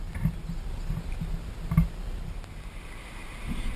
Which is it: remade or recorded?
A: recorded